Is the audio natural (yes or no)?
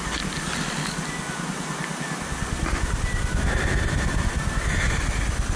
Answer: yes